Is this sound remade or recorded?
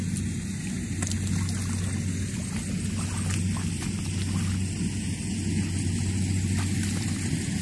recorded